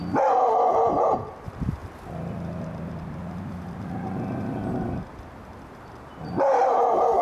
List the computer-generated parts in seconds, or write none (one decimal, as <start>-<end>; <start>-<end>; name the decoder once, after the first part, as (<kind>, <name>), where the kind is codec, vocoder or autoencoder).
none